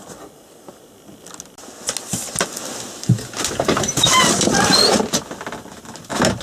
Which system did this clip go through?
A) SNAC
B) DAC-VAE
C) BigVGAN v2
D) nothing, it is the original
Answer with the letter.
D